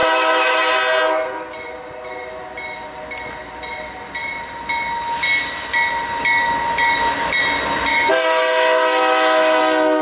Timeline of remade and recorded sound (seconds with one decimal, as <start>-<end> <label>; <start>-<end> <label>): 0.0-0.6 remade; 0.6-7.9 recorded; 7.9-9.6 remade; 9.6-10.0 recorded